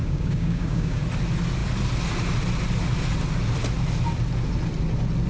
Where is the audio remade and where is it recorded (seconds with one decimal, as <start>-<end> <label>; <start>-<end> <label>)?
0.0-1.0 remade; 1.0-5.3 recorded